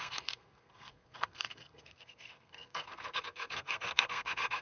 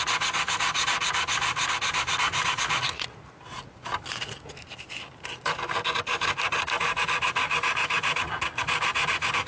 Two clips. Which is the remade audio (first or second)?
first